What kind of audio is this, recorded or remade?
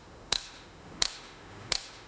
remade